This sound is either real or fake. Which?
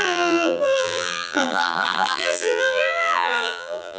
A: fake